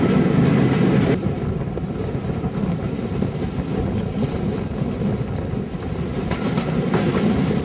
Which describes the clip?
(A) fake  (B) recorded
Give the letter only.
B